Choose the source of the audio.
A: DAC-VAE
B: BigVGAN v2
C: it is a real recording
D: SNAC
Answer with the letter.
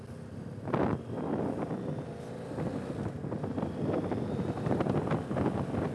C